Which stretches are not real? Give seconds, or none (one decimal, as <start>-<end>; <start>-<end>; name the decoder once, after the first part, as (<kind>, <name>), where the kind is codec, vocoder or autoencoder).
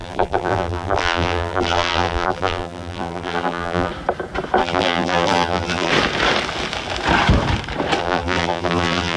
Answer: 0.0-3.9 (vocoder, BigVGAN v2); 4.6-5.9; 8.0-9.2